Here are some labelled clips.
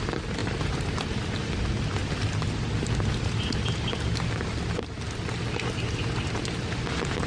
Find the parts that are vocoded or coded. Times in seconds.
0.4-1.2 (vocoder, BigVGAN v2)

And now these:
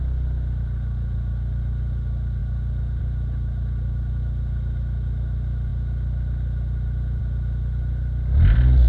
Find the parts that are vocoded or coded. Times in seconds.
none

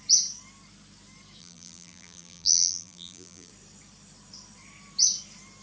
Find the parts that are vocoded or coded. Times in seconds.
1.4-3.5 (vocoder, BigVGAN v2)

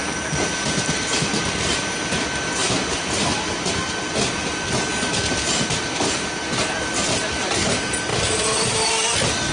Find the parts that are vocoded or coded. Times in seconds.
2.6-3.7 (vocoder, BigVGAN v2); 8.1-8.9

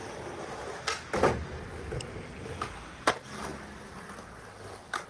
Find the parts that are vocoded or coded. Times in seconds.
3.1-3.5 (vocoder, BigVGAN v2)